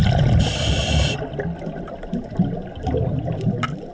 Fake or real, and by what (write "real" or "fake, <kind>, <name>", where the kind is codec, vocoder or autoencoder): real